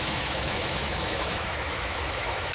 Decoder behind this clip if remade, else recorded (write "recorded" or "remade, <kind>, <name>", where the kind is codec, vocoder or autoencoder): remade, autoencoder, DAC-VAE